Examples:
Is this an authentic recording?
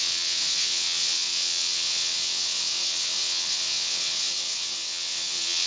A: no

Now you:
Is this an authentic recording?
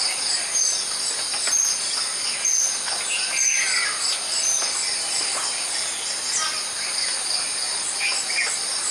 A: yes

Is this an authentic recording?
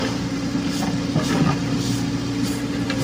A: yes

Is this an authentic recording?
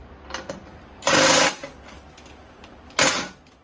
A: yes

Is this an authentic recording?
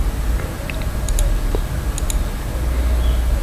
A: yes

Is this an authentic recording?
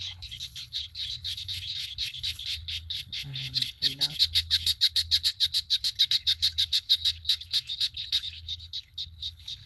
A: no